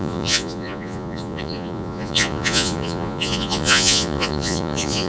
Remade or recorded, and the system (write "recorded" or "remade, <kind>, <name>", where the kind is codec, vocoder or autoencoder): remade, vocoder, Vocos